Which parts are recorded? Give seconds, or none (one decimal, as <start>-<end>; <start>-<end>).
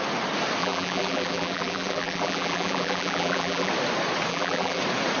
0.0-0.6; 3.7-4.3; 4.8-5.2